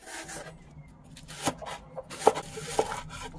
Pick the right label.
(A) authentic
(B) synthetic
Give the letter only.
A